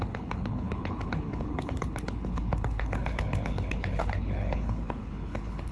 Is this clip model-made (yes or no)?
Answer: yes